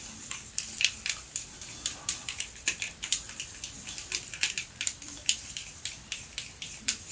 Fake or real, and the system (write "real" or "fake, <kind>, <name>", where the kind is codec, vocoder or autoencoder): fake, vocoder, BigVGAN v2